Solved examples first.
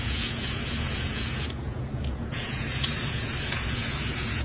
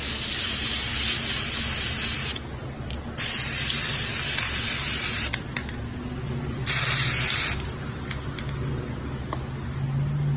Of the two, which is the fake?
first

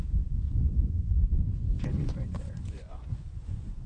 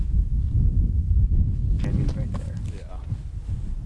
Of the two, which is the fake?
first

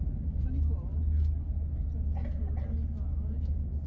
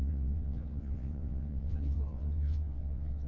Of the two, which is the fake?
second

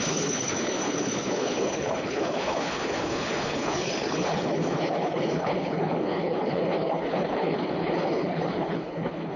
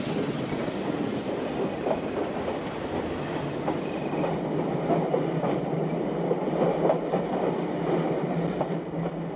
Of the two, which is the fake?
first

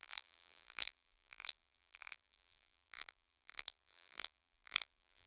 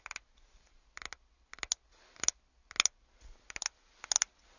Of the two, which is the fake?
first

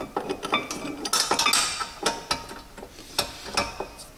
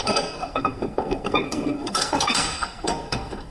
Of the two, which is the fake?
second